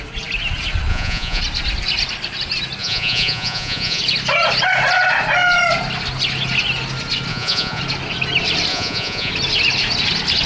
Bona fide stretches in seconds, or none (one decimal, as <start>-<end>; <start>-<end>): 0.0-0.9; 1.4-2.8; 4.0-7.3; 7.8-8.7; 9.3-10.5